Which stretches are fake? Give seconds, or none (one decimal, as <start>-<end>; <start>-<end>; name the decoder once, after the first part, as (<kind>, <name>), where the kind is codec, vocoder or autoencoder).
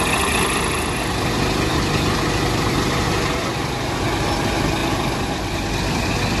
4.8-5.7 (vocoder, BigVGAN v2)